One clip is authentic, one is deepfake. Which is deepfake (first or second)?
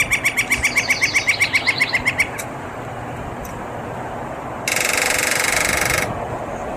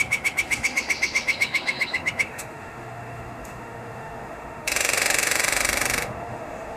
second